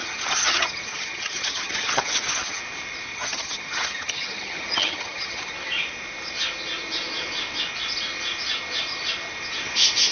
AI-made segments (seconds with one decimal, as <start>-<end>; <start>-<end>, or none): 0.0-2.6; 3.1-5.5